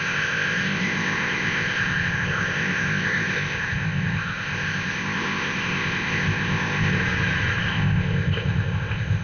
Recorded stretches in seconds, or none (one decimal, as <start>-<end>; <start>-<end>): 7.0-7.6